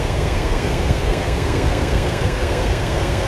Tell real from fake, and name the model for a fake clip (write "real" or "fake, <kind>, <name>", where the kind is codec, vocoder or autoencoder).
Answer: fake, codec, SNAC